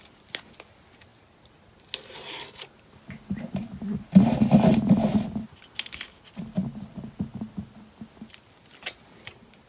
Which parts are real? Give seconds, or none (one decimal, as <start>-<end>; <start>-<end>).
0.0-9.7

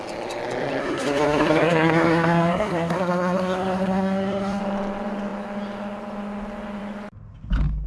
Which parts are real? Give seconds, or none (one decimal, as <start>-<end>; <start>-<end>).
0.0-0.8; 4.6-7.9

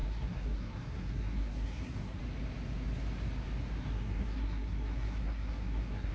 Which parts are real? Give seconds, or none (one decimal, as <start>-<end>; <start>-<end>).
2.2-3.8

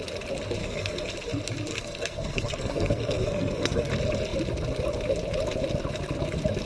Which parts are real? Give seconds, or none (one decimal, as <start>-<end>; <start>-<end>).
0.0-0.6; 1.1-1.7; 3.9-6.7